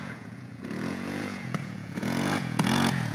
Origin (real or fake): fake